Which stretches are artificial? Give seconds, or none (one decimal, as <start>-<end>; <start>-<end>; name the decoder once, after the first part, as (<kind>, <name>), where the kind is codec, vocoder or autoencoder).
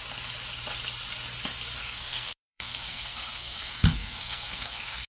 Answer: 1.8-5.1 (codec, SNAC)